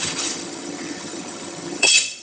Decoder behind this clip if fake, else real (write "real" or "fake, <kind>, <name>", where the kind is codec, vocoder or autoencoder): fake, vocoder, HiFi-GAN